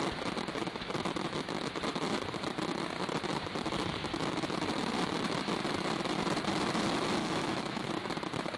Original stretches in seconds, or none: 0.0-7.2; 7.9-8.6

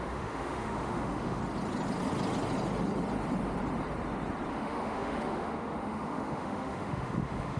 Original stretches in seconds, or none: 1.4-4.5

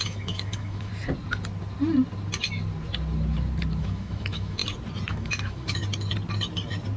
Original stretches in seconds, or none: 0.9-3.8; 4.6-5.1; 5.8-7.0